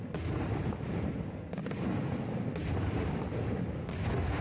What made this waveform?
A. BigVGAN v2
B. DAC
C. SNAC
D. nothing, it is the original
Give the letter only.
D